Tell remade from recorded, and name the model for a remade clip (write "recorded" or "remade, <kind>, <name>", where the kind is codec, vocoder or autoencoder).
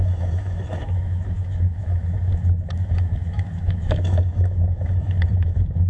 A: remade, autoencoder, DAC-VAE